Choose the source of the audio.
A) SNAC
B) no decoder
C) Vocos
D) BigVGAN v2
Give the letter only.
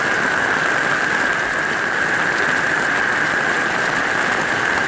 B